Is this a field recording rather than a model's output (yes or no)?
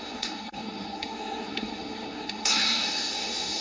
no